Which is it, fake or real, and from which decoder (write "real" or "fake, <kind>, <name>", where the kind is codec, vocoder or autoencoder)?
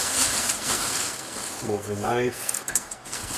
fake, codec, SNAC